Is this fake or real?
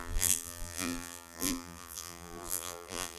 fake